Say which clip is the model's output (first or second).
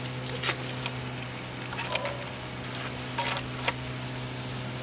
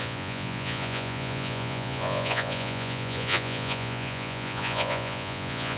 second